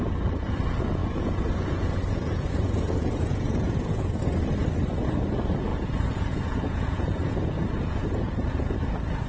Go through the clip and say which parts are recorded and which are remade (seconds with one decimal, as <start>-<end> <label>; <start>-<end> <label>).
0.0-1.0 recorded; 1.0-4.2 remade; 4.2-5.7 recorded; 5.7-8.8 remade; 8.8-9.3 recorded